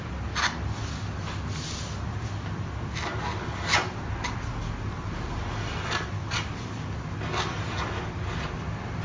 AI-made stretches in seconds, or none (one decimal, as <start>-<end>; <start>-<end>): none